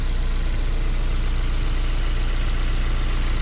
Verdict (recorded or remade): recorded